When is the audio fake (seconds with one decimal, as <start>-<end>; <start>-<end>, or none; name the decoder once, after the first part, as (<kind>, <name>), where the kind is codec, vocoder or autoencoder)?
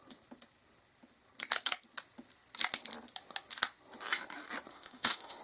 4.7-5.4 (autoencoder, DAC-VAE)